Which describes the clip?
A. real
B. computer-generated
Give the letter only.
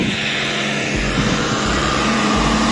B